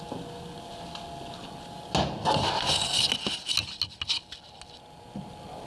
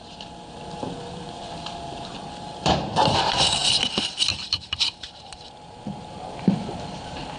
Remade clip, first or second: second